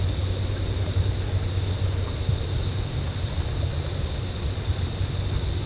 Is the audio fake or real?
real